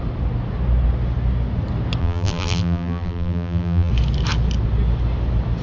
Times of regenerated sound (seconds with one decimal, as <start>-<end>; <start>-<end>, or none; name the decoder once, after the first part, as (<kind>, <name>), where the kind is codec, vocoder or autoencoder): 2.0-3.9 (vocoder, BigVGAN v2)

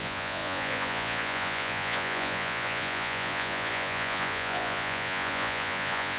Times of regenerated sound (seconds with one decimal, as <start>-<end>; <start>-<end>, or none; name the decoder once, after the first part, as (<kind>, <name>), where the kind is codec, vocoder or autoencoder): 0.0-6.2 (vocoder, Vocos)

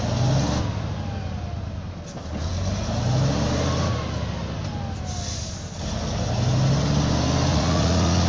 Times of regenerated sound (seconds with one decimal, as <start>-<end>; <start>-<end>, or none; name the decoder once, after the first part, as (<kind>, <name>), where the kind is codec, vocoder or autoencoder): 7.5-8.3 (vocoder, Vocos)